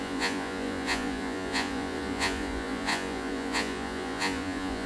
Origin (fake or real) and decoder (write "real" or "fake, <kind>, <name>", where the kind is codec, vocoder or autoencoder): fake, vocoder, Vocos